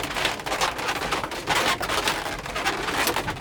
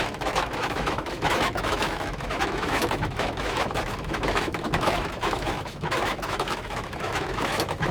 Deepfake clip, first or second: second